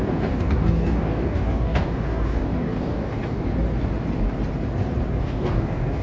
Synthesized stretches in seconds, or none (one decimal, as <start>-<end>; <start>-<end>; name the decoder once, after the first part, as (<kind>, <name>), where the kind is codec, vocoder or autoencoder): 0.0-3.4 (codec, DAC); 5.2-6.0